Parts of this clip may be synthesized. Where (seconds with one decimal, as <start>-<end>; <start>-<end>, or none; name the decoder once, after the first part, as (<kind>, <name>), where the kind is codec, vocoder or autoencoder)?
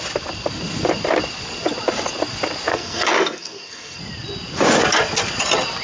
2.7-4.0 (codec, SNAC)